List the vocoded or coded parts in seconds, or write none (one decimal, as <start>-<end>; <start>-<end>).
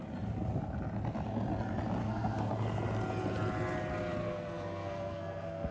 2.0-2.5; 4.2-5.7